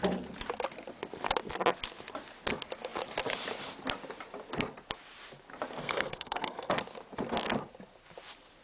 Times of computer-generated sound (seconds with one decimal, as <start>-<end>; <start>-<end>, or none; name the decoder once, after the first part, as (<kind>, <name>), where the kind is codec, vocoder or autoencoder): 5.8-6.7 (codec, SNAC)